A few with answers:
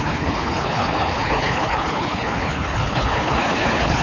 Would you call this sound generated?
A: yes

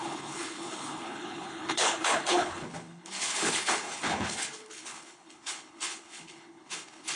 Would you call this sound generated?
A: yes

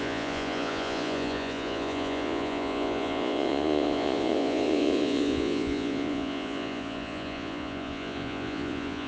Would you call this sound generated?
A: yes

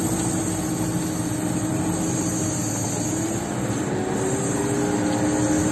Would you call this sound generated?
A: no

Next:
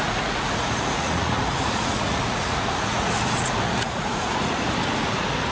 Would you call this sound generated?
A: yes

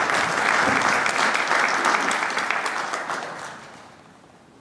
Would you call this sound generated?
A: no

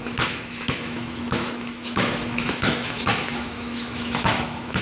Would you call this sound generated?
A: yes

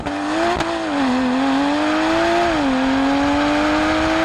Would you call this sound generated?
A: no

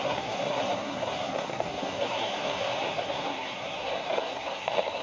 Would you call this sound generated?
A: yes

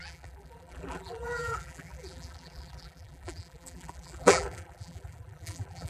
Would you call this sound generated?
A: yes